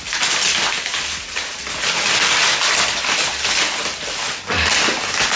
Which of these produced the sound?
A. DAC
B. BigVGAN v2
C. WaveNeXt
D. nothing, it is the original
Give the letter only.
D